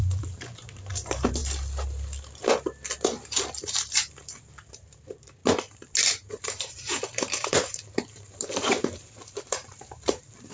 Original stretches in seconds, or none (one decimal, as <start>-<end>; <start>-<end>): 1.4-3.6; 5.4-6.3